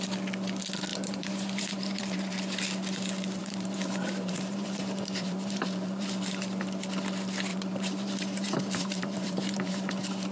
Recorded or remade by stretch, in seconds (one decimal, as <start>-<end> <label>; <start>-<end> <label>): 0.0-0.9 recorded; 0.9-2.4 remade; 2.4-3.4 recorded; 3.4-6.1 remade; 6.1-7.5 recorded; 7.5-9.9 remade; 9.9-10.3 recorded

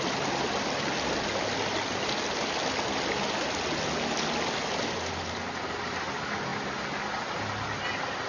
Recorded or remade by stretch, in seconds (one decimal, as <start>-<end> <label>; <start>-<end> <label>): 0.0-8.3 recorded

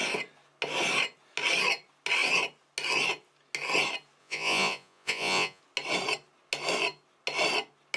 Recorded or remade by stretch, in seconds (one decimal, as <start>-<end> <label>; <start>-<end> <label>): 0.0-4.2 recorded; 4.2-5.6 remade; 5.6-8.0 recorded

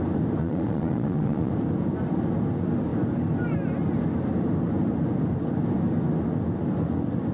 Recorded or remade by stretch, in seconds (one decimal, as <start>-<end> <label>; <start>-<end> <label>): 0.0-0.4 recorded; 0.4-1.5 remade; 1.5-7.3 recorded

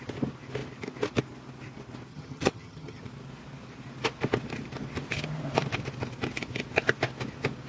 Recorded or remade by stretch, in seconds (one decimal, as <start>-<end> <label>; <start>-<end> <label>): 0.0-2.1 recorded; 2.1-3.0 remade; 3.0-7.7 recorded